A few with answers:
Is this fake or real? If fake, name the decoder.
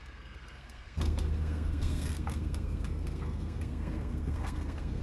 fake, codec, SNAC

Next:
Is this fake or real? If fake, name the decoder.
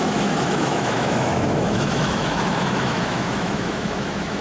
fake, autoencoder, DAC-VAE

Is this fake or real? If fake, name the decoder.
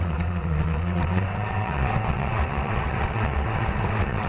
fake, vocoder, WaveNeXt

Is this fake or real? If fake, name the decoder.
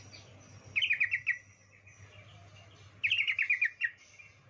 real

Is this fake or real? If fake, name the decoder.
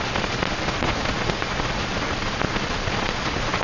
fake, vocoder, Vocos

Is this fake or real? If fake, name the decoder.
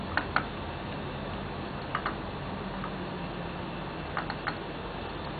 real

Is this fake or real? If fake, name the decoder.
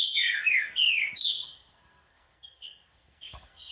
fake, codec, SNAC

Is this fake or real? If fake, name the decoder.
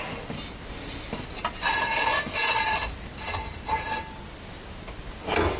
real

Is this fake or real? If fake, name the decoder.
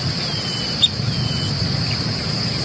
real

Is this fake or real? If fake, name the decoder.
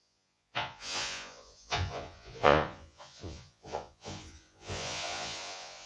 fake, vocoder, Vocos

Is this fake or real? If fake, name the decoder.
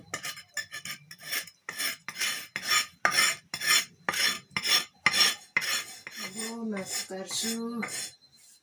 real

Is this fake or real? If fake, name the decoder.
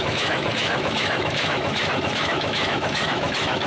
fake, autoencoder, DAC-VAE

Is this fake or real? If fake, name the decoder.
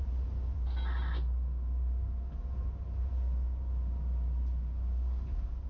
real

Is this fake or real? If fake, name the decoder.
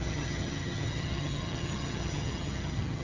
fake, vocoder, HiFi-GAN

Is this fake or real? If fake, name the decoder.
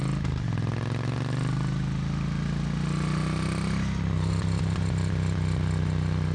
real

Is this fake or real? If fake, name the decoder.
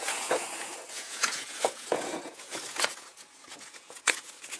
fake, vocoder, Vocos